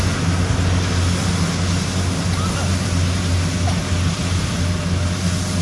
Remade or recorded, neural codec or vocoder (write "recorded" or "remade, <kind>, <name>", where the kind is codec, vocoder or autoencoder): recorded